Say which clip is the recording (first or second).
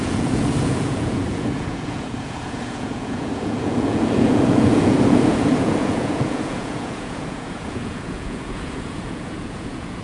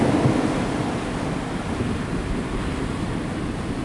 second